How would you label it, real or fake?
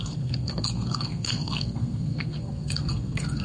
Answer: fake